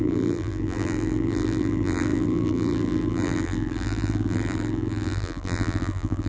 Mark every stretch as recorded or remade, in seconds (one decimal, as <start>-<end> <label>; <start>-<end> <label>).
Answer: 0.0-6.3 remade